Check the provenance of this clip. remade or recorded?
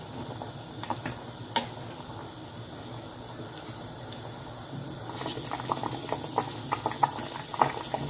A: recorded